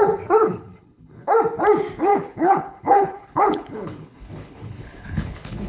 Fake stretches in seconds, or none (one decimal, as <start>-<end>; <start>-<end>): 0.4-1.3; 2.1-5.7